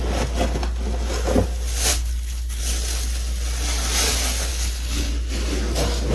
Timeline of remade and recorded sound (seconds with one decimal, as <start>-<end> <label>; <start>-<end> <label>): 0.0-1.9 recorded; 1.9-2.6 remade; 2.6-4.5 recorded; 4.5-5.1 remade; 5.1-6.1 recorded